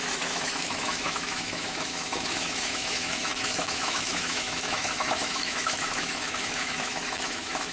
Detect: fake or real fake